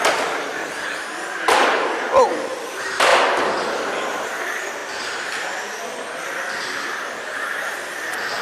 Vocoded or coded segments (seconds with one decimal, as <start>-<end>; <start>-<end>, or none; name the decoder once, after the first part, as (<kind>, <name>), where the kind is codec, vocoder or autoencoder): 0.0-3.1 (vocoder, BigVGAN v2); 3.7-8.4